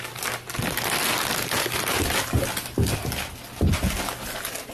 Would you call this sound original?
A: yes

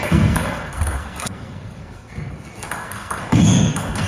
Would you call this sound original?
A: no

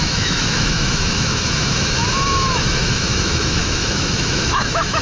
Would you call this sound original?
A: no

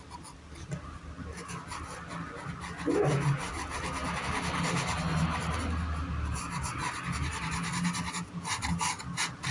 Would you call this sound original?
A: yes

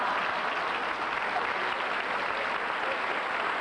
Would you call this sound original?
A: yes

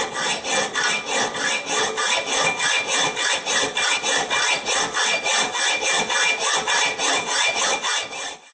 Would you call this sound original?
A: yes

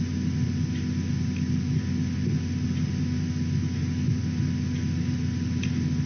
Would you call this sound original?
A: yes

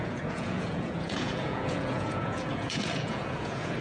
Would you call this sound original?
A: no